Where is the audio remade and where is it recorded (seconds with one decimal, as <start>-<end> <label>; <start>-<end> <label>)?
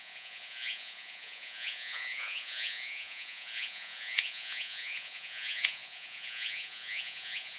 0.0-7.6 remade